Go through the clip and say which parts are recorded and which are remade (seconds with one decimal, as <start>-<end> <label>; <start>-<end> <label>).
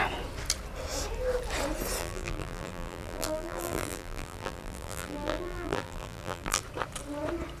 0.0-2.0 recorded; 2.0-6.6 remade; 6.6-7.6 recorded